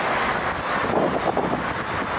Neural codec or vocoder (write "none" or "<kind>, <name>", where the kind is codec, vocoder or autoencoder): none